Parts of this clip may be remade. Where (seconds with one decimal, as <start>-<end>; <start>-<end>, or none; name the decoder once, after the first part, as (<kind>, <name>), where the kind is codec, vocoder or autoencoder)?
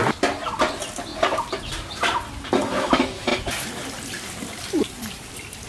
1.1-2.5 (vocoder, BigVGAN v2); 3.3-5.3